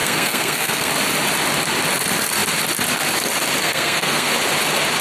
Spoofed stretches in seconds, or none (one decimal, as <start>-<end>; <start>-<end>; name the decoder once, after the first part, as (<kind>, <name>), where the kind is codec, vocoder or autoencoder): 0.0-0.9 (codec, SNAC); 3.6-4.3

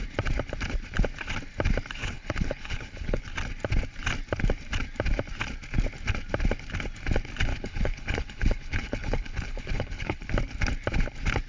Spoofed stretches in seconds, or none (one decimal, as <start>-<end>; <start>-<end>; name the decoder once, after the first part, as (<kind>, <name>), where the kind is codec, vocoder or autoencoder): 2.0-3.2 (codec, HILCodec); 7.5-10.3